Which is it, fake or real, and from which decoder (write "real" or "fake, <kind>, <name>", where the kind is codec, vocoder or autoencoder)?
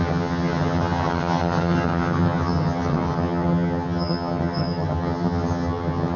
fake, vocoder, HiFi-GAN